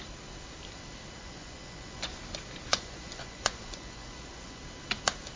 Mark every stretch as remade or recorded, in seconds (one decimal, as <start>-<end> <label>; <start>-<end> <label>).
0.0-1.2 recorded; 1.2-2.2 remade; 2.2-2.7 recorded; 2.7-4.6 remade; 4.6-5.4 recorded

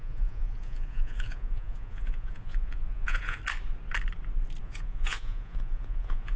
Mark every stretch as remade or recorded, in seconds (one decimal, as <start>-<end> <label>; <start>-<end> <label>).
0.0-3.4 remade; 3.4-4.6 recorded; 4.6-6.4 remade

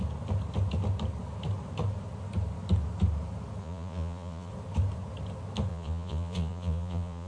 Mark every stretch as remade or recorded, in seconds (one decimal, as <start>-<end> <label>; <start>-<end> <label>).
0.0-3.6 recorded; 3.6-4.5 remade; 4.5-5.7 recorded; 5.7-7.3 remade

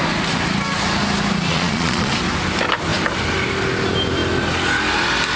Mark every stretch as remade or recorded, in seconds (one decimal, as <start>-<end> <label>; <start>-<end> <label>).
0.0-1.5 recorded; 1.5-2.1 remade; 2.1-5.4 recorded